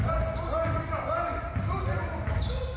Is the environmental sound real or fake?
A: real